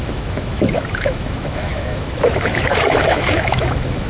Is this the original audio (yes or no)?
no